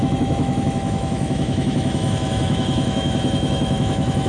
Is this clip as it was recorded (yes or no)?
no